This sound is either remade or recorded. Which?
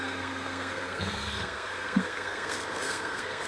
remade